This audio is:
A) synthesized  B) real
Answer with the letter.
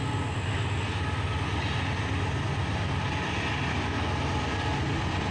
B